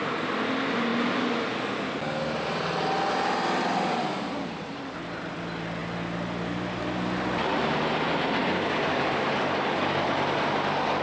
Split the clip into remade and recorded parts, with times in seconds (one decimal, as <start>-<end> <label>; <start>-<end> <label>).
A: 0.0-8.4 recorded; 8.4-10.1 remade; 10.1-11.0 recorded